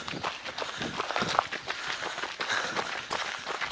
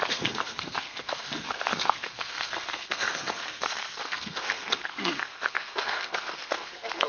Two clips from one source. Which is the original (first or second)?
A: first